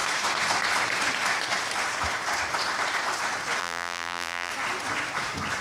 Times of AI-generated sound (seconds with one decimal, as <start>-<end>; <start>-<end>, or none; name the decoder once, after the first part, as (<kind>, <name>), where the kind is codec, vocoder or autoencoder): 3.6-4.5 (vocoder, BigVGAN v2)